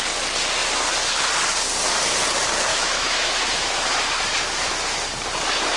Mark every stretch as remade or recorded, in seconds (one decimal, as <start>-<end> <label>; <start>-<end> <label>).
0.0-2.7 recorded; 2.7-4.4 remade; 4.4-5.8 recorded